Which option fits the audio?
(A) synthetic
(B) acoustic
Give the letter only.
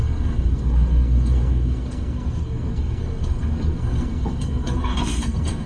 A